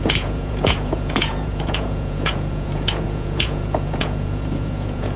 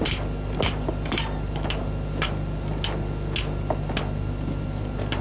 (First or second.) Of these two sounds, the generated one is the first